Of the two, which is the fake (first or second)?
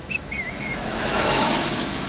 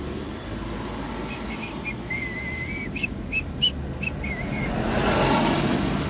first